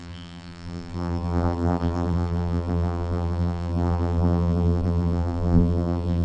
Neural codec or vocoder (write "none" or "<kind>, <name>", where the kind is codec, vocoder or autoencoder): vocoder, BigVGAN v2